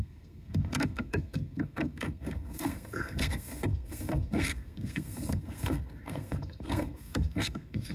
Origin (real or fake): fake